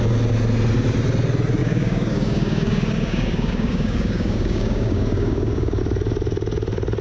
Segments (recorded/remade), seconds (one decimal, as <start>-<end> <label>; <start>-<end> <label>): 0.0-1.6 recorded; 1.6-5.8 remade; 5.8-7.0 recorded

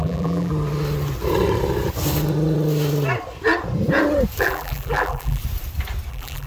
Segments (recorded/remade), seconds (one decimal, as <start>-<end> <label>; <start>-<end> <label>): 0.0-0.5 remade; 0.5-4.4 recorded; 4.4-5.4 remade; 5.4-6.1 recorded; 6.1-6.5 remade

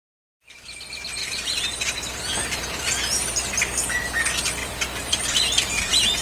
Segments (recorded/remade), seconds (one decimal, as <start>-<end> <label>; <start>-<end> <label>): 0.0-1.2 recorded; 1.2-3.5 remade; 3.5-4.6 recorded; 4.6-5.8 remade; 5.8-6.2 recorded

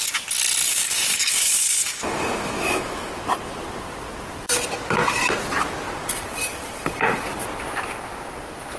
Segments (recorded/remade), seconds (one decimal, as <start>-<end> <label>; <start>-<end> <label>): 0.0-0.7 recorded; 0.7-3.1 remade; 3.1-8.8 recorded

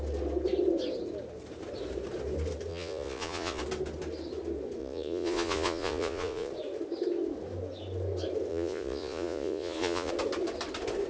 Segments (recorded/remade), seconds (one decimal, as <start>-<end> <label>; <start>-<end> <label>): 0.0-2.7 recorded; 2.7-3.6 remade; 3.6-4.8 recorded; 4.8-6.5 remade; 6.5-8.5 recorded; 8.5-10.1 remade; 10.1-11.1 recorded

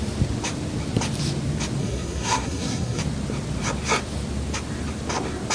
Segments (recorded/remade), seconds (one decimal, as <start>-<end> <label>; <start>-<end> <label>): 0.0-1.8 recorded; 1.8-3.0 remade; 3.0-5.5 recorded

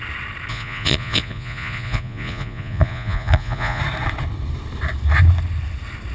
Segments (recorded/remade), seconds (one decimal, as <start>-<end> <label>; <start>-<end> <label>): 0.0-0.5 recorded; 0.5-3.8 remade; 3.8-6.1 recorded